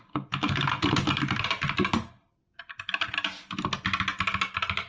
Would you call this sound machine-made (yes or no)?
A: no